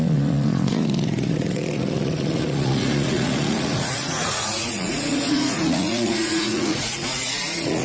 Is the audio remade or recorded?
remade